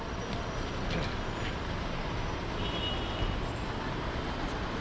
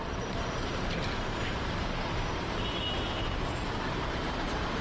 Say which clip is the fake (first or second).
second